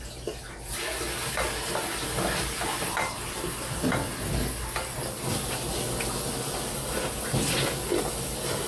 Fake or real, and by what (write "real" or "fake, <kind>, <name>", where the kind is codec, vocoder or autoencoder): real